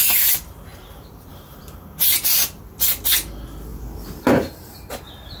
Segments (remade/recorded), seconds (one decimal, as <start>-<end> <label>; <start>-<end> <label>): 0.0-0.7 recorded; 0.7-2.6 remade; 2.6-3.7 recorded; 3.7-5.0 remade; 5.0-5.4 recorded